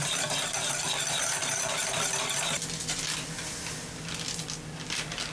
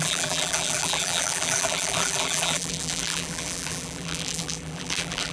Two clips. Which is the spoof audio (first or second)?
second